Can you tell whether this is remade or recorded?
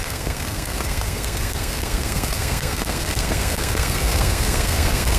remade